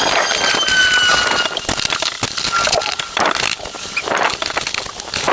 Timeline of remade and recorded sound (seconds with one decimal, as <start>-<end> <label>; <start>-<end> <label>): 0.0-5.3 recorded